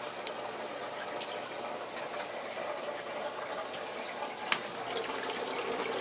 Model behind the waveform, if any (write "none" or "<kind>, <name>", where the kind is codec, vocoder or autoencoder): none